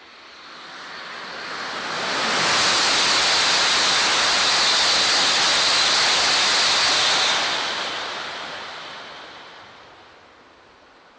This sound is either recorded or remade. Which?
recorded